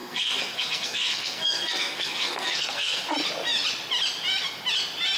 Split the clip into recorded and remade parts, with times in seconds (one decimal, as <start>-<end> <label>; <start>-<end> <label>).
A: 0.0-3.1 remade; 3.1-5.2 recorded